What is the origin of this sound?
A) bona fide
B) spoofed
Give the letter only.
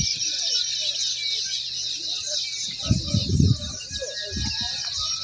A